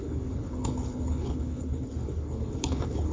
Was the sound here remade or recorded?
remade